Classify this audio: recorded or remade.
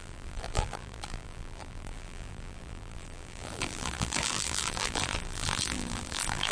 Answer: remade